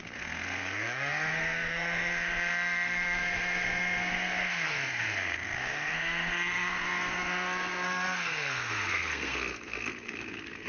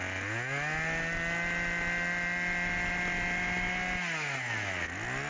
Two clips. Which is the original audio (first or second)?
second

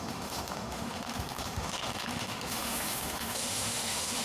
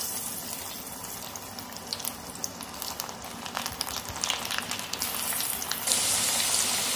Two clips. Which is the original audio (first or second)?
second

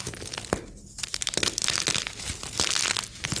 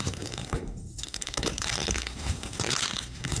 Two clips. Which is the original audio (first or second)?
first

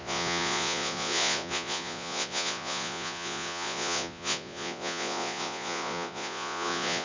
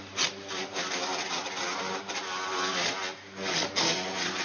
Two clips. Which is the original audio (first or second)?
second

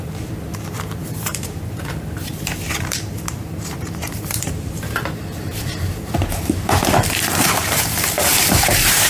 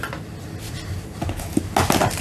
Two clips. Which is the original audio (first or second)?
second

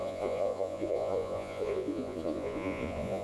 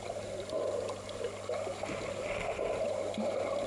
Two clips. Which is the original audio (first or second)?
second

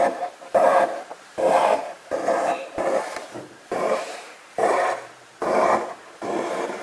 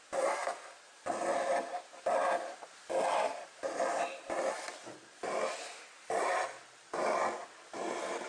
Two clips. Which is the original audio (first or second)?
second